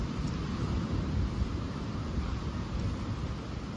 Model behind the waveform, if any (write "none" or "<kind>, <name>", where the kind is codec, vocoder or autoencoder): none